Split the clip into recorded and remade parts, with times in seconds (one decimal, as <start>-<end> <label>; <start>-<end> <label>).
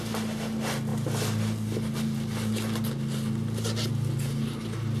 0.0-5.0 recorded